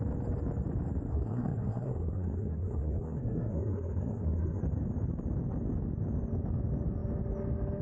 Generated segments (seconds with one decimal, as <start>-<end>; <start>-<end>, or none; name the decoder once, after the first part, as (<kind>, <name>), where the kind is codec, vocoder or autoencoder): 1.1-4.6 (codec, SNAC)